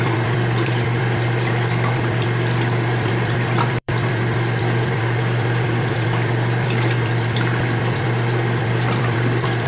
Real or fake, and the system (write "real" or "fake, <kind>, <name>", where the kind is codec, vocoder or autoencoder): fake, vocoder, BigVGAN v2